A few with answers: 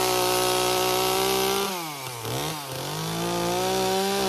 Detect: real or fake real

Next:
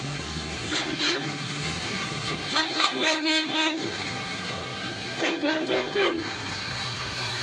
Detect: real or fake fake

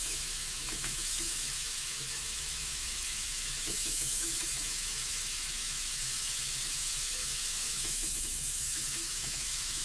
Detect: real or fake fake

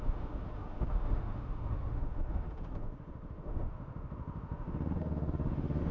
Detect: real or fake fake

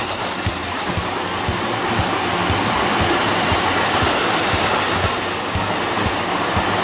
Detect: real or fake real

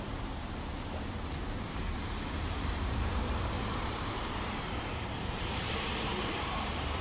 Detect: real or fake fake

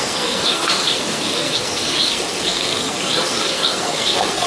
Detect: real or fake fake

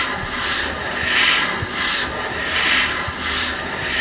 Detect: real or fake real